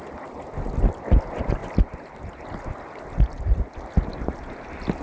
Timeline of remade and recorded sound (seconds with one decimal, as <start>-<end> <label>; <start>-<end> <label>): 0.0-5.0 recorded